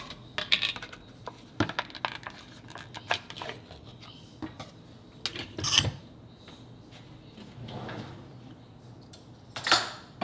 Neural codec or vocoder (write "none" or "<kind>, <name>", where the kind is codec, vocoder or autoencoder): none